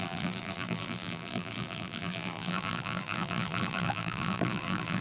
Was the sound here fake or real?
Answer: fake